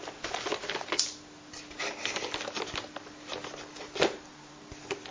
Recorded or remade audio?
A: recorded